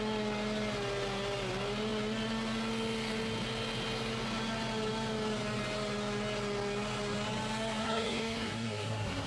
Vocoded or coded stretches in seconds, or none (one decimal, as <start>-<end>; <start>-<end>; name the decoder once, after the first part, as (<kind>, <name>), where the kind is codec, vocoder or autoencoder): 7.8-9.3 (codec, SNAC)